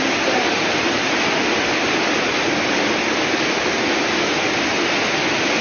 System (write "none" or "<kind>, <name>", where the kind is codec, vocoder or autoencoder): none